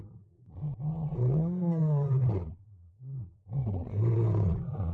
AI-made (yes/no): yes